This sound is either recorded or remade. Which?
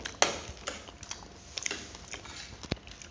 recorded